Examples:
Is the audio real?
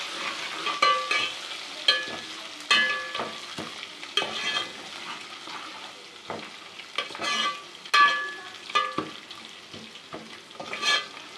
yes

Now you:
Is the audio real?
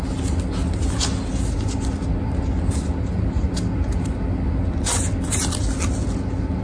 yes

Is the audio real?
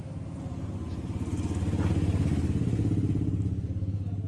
yes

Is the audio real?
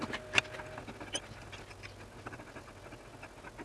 yes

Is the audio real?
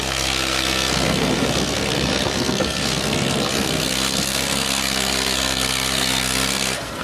no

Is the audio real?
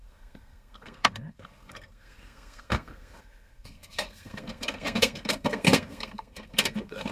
no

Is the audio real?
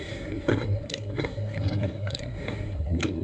no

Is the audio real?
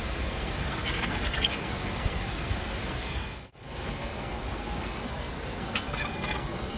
no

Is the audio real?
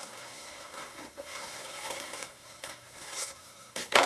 no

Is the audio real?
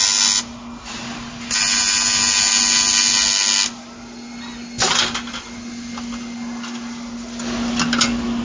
yes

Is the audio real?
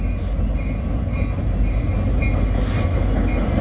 yes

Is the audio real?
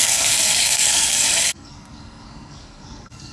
no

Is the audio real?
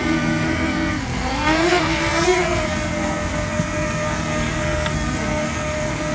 no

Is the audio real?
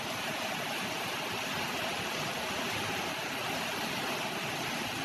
yes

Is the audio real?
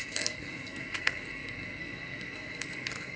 no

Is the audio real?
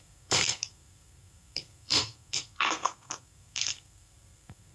no